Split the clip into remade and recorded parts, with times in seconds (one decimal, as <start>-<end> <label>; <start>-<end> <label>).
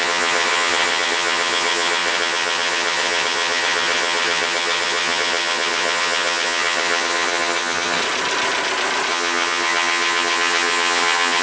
0.0-8.0 remade; 8.0-9.1 recorded; 9.1-11.4 remade